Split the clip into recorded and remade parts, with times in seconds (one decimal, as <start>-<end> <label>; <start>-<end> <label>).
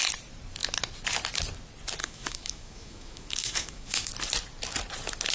0.0-2.0 recorded; 2.0-4.1 remade; 4.1-5.3 recorded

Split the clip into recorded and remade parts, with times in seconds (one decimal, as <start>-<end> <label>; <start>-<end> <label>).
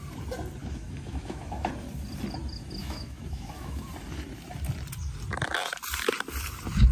0.0-0.6 recorded; 0.6-1.7 remade; 1.7-2.8 recorded; 2.8-3.8 remade; 3.8-6.9 recorded